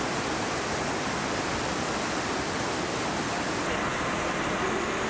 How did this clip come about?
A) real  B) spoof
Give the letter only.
A